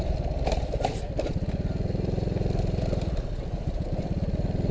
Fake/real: real